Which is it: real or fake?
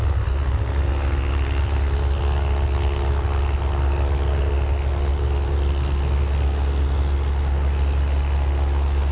real